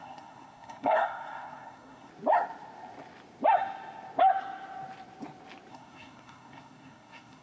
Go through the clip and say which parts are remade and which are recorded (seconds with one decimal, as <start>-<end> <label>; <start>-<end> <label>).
0.0-2.1 remade; 2.1-5.7 recorded; 5.7-7.4 remade